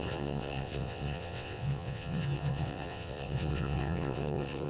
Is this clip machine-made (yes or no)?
yes